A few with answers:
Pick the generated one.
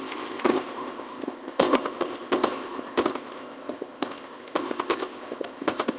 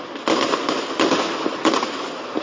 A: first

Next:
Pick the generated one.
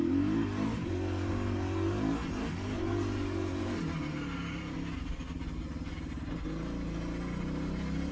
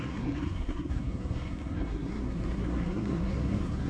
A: second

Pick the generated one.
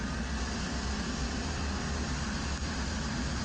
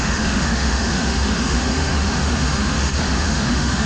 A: second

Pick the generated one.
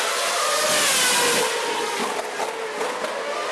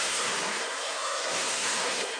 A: second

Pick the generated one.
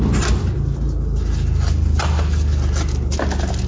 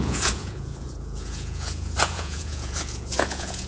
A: second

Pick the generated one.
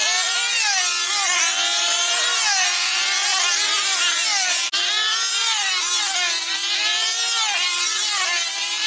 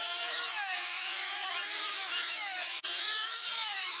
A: second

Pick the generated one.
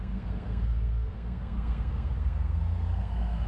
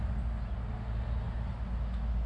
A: first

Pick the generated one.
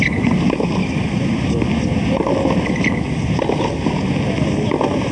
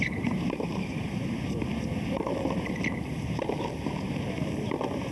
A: second